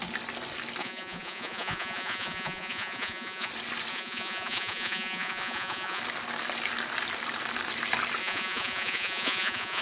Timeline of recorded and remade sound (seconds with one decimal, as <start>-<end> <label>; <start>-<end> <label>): 0.0-0.8 recorded; 0.8-3.5 remade; 3.5-3.9 recorded; 3.9-6.0 remade; 6.0-8.2 recorded; 8.2-9.8 remade